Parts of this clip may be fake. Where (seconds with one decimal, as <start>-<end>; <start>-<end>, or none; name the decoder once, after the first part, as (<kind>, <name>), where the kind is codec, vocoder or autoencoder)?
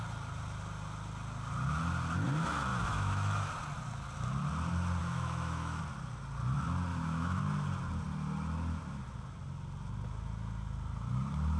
2.7-3.5 (autoencoder, DAC-VAE); 5.0-5.8; 6.9-7.4